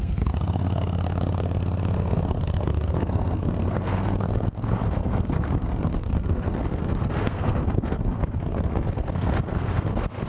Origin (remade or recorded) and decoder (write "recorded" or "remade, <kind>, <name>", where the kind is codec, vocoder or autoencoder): remade, codec, SNAC